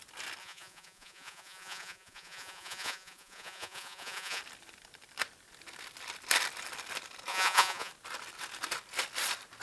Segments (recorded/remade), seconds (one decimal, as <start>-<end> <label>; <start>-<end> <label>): 0.0-0.4 recorded; 0.4-4.4 remade; 4.4-7.3 recorded; 7.3-7.9 remade; 7.9-9.6 recorded